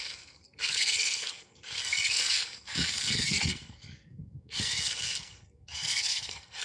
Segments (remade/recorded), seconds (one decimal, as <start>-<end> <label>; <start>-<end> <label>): 0.0-6.6 remade